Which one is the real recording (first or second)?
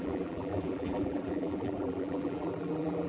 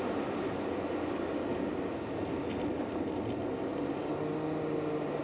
second